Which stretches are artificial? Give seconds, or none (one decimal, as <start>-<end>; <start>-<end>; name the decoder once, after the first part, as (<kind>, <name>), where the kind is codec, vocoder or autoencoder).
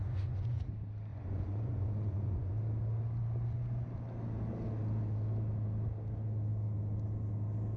0.0-0.6 (vocoder, Vocos); 1.1-2.5